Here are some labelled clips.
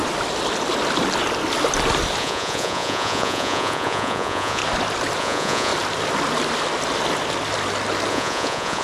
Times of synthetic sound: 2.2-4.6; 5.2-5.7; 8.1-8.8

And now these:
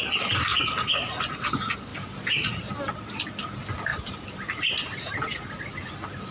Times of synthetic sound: 1.9-2.7; 3.9-4.7

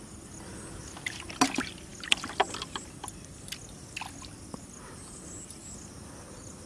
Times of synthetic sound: none